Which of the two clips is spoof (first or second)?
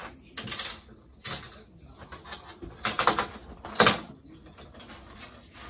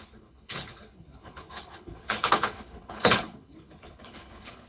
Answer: second